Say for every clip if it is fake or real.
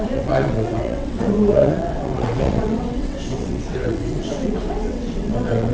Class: fake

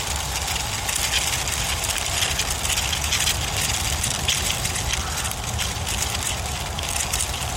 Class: real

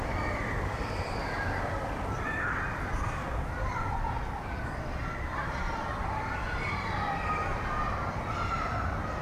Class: fake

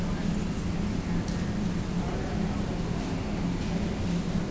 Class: real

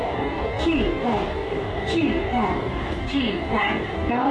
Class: fake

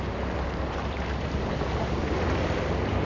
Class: fake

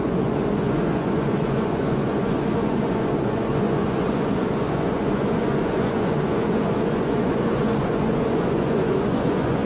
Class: fake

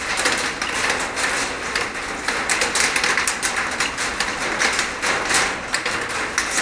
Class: real